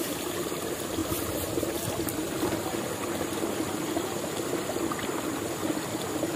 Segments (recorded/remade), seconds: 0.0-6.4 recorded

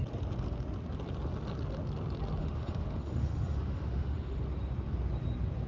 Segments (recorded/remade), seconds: 0.0-2.4 recorded; 2.4-4.4 remade; 4.4-5.7 recorded